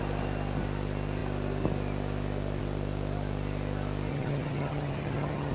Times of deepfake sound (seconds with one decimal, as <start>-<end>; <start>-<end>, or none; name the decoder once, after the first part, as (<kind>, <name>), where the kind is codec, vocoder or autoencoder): 4.1-5.5 (vocoder, HiFi-GAN)